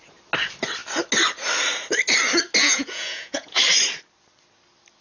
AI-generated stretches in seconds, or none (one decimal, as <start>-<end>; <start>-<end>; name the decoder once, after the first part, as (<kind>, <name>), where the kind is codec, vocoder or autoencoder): 2.6-3.6 (vocoder, Vocos)